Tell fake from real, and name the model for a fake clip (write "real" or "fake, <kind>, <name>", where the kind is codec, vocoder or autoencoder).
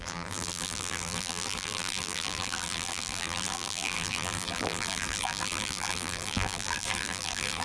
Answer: fake, vocoder, BigVGAN v2